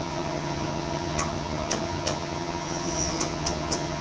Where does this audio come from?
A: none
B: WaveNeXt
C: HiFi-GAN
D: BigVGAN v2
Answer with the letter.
C